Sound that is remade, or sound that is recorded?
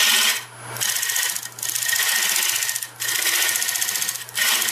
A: recorded